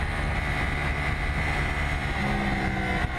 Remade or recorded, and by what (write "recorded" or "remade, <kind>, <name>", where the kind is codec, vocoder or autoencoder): recorded